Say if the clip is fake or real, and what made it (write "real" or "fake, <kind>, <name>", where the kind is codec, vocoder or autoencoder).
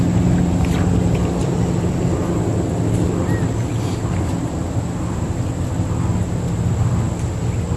real